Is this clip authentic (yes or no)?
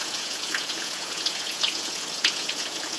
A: no